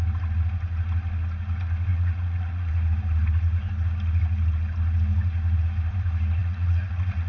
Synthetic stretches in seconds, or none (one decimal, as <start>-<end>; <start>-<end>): 1.9-2.7; 6.4-7.3